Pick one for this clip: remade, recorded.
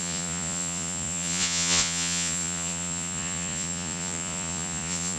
remade